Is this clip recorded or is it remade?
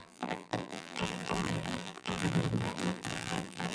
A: remade